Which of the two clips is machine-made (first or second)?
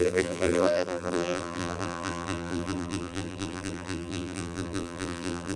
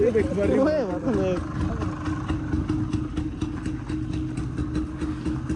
first